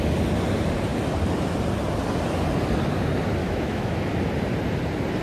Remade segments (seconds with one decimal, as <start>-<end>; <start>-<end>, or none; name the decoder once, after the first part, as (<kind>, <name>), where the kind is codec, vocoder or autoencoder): 3.4-3.9 (autoencoder, DAC-VAE)